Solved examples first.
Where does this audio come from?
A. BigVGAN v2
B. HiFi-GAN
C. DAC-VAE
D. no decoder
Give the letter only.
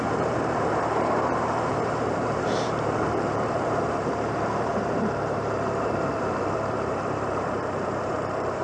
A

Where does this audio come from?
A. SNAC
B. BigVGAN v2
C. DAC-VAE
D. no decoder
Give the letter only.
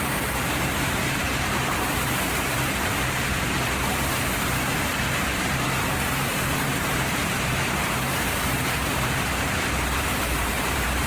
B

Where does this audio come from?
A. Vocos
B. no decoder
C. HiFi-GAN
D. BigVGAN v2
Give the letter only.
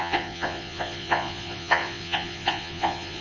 A